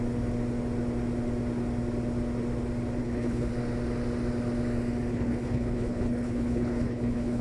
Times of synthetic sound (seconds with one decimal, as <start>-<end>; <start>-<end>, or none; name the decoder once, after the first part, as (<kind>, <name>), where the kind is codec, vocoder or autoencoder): 3.0-3.5 (codec, HILCodec); 5.1-7.4